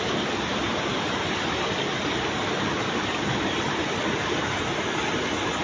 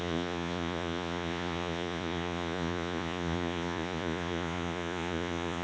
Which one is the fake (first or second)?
second